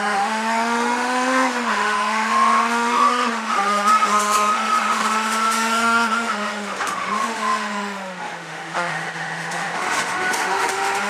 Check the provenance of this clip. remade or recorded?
remade